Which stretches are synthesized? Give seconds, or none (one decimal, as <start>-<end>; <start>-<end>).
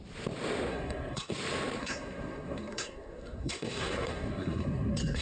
0.7-1.3; 1.8-5.2